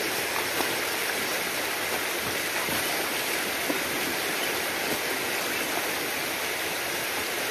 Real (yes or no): yes